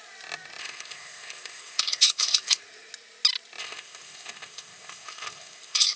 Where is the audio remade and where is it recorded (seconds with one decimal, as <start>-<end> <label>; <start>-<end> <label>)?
0.0-0.6 recorded; 0.6-2.6 remade; 2.6-3.6 recorded; 3.6-6.0 remade

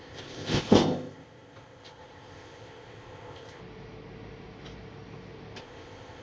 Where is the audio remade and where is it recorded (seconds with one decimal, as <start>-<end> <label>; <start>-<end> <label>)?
0.0-3.6 remade; 3.6-5.6 recorded; 5.6-6.2 remade